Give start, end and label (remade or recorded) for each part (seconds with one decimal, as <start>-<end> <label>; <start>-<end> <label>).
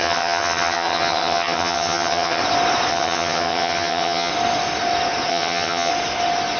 0.0-2.4 remade; 2.4-2.9 recorded; 2.9-4.3 remade; 4.3-5.3 recorded; 5.3-5.9 remade; 5.9-6.6 recorded